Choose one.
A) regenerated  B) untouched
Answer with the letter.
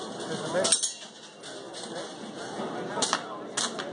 B